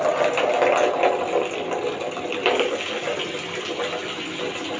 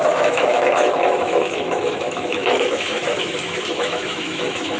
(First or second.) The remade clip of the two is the second